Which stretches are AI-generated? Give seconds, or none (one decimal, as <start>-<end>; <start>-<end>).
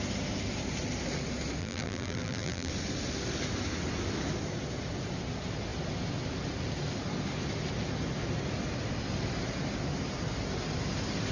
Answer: 1.6-2.7